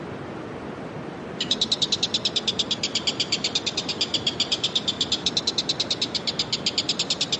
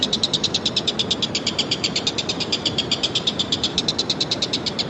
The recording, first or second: first